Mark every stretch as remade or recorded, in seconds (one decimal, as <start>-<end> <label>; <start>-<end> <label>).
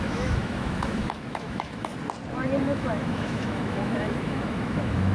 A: 0.0-1.9 remade; 1.9-2.6 recorded; 2.6-5.1 remade